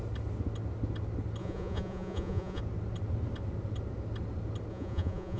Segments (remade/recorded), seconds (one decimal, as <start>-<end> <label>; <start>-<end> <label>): 0.0-1.4 recorded; 1.4-2.6 remade; 2.6-4.7 recorded; 4.7-5.4 remade